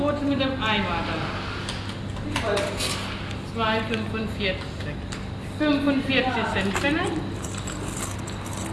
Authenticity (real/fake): real